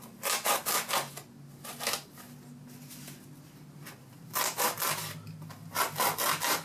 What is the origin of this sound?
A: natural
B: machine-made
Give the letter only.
A